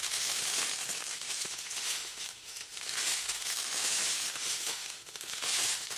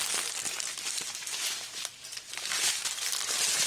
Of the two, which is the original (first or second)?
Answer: second